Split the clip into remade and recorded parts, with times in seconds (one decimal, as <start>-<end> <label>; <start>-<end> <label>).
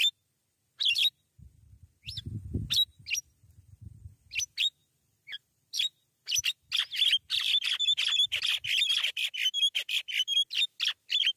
0.0-4.8 recorded; 4.8-6.4 remade; 6.4-7.3 recorded; 7.3-10.5 remade; 10.5-11.4 recorded